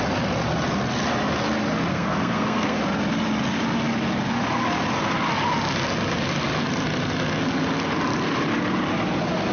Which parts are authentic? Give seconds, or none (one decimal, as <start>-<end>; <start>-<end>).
0.0-1.9; 2.8-9.5